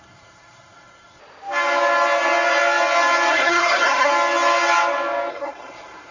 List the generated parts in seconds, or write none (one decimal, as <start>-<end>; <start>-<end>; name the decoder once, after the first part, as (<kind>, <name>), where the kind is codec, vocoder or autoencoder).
0.0-1.2 (codec, SNAC); 3.3-4.1; 5.3-6.1